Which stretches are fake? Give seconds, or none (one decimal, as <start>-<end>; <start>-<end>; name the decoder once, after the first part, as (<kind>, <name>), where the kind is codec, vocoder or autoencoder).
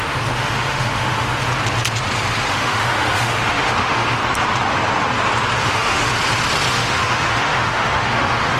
0.0-1.5 (autoencoder, DAC-VAE); 2.5-4.2; 5.6-6.1; 6.7-8.6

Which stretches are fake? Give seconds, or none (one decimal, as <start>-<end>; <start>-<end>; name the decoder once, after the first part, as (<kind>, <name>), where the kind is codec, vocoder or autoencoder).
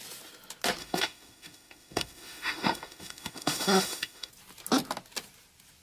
0.8-4.3 (autoencoder, DAC-VAE)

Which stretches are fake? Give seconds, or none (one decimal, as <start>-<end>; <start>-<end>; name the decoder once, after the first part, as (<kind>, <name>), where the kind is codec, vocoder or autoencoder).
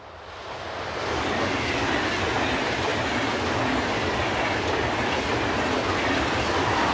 none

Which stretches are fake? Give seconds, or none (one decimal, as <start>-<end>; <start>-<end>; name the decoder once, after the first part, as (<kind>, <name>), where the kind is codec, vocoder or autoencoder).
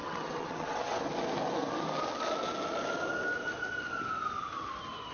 0.0-1.0 (vocoder, WaveNeXt)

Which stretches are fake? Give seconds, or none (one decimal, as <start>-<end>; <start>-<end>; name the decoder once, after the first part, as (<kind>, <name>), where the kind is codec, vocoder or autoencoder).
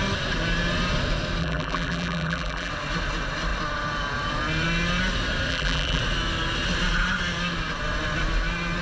1.4-2.7 (vocoder, BigVGAN v2); 5.5-6.0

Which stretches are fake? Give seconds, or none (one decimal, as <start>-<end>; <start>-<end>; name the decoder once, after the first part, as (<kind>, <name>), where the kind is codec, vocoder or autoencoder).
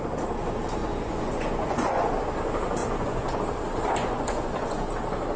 0.8-2.2 (vocoder, Vocos); 2.8-3.4; 4.0-4.9